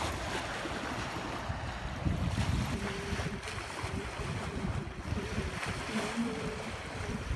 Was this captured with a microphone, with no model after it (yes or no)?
yes